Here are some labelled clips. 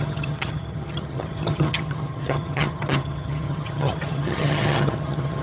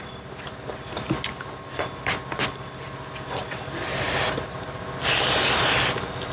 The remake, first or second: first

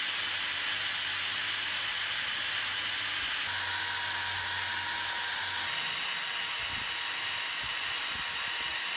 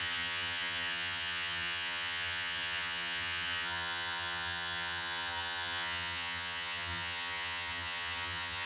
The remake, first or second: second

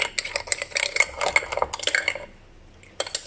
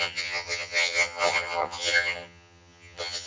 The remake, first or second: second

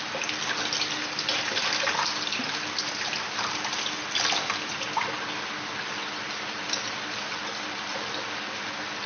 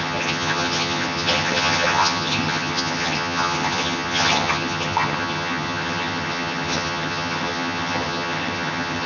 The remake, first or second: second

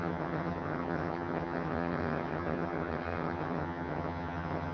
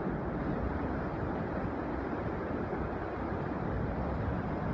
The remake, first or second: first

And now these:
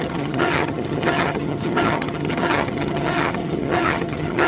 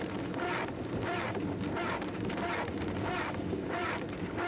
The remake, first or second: first